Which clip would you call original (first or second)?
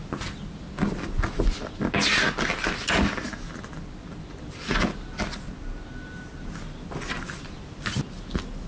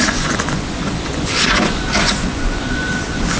first